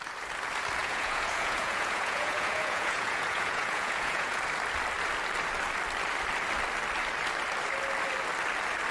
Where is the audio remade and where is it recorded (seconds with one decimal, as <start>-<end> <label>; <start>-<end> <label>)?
0.0-0.8 recorded; 0.8-4.4 remade; 4.4-8.9 recorded